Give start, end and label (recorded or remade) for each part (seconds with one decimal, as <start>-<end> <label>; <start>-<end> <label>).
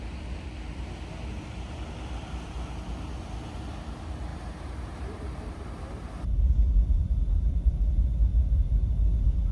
0.0-4.3 recorded; 4.3-7.7 remade; 7.7-8.3 recorded; 8.3-8.8 remade; 8.8-9.5 recorded